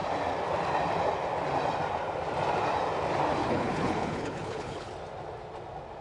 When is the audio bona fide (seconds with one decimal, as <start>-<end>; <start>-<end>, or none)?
0.0-3.4; 4.9-6.0